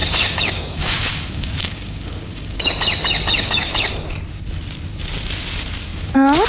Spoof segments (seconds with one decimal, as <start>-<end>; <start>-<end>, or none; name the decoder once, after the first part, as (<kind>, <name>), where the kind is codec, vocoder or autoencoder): 0.0-3.9 (codec, DAC)